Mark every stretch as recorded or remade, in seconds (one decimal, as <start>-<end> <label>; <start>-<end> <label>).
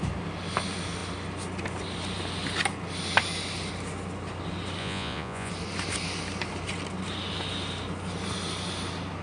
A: 0.0-4.8 recorded; 4.8-5.5 remade; 5.5-9.2 recorded